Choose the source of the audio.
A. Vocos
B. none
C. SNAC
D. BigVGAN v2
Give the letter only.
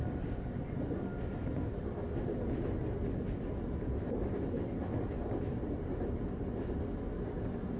B